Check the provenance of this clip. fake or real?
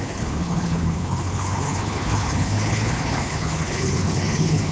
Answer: fake